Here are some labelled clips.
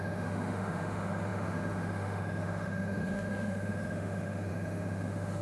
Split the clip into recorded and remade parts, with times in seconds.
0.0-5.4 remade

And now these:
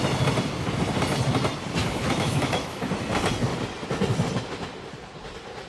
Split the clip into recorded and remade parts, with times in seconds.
0.0-1.8 recorded; 1.8-2.9 remade; 2.9-5.7 recorded

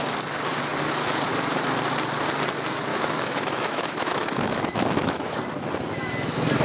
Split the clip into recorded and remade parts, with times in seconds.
0.0-2.9 recorded; 2.9-5.4 remade; 5.4-6.6 recorded

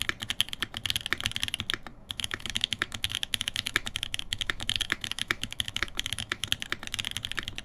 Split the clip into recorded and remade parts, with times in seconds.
0.0-1.9 recorded; 1.9-6.5 remade; 6.5-7.6 recorded

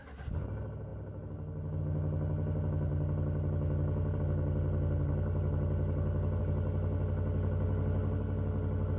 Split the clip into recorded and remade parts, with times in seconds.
0.0-9.0 recorded